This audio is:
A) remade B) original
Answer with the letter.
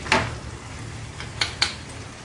A